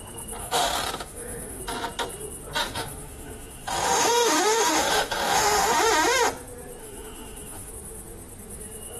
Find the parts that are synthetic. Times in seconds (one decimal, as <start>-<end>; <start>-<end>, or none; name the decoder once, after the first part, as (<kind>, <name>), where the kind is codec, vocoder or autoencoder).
0.4-1.6 (autoencoder, DAC-VAE); 2.6-5.8; 6.8-7.7